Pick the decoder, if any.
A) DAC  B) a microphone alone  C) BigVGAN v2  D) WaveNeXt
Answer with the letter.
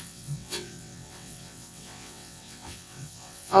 D